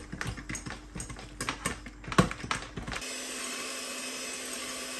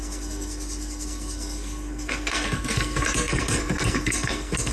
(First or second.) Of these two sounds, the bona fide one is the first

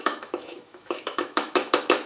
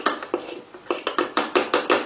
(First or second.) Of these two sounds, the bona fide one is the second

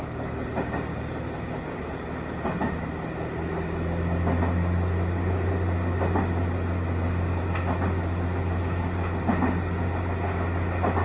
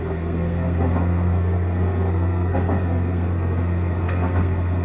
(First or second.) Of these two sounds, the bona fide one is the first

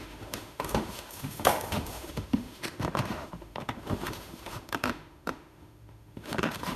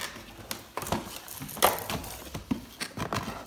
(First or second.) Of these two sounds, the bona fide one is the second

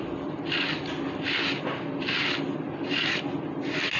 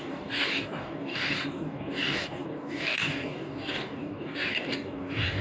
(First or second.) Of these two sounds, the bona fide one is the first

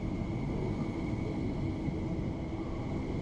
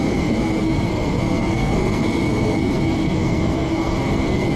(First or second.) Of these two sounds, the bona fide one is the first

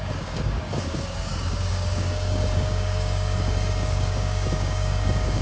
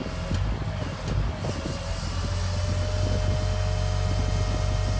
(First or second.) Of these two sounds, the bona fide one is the second